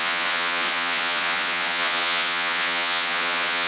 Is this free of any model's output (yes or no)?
no